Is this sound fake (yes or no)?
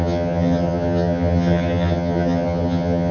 yes